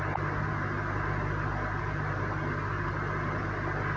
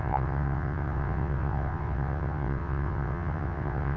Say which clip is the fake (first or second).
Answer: second